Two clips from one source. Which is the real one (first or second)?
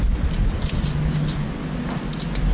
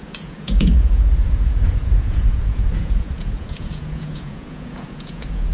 first